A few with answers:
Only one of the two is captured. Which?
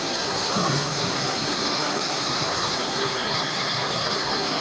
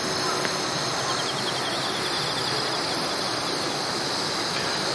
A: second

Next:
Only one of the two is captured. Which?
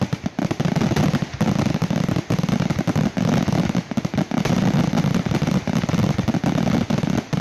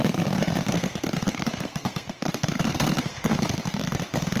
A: first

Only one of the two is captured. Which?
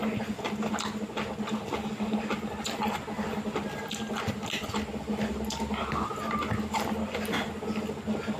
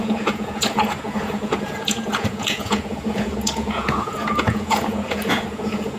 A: first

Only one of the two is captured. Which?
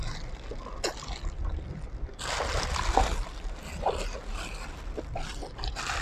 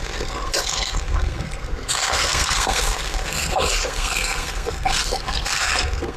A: first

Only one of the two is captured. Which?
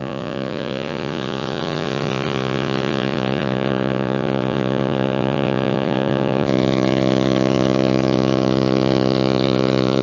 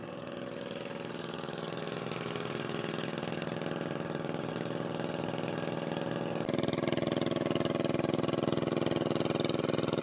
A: second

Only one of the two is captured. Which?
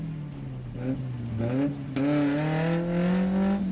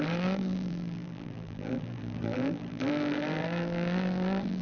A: first